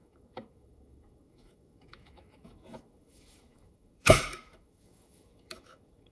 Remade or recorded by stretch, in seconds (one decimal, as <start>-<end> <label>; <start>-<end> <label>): 0.0-6.1 remade

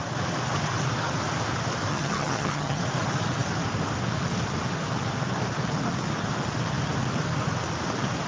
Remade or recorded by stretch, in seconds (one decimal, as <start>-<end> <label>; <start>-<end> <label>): 0.0-1.9 recorded; 1.9-2.8 remade; 2.8-8.3 recorded